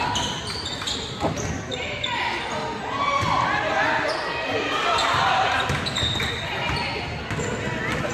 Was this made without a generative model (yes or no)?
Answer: yes